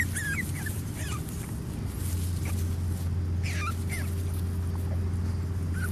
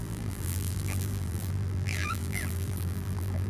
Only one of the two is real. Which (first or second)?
first